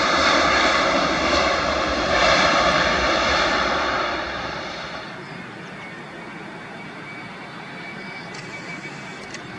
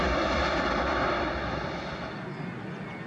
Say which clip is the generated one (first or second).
first